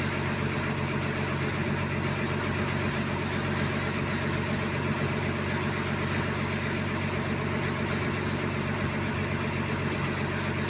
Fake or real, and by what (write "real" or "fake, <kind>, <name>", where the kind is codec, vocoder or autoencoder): real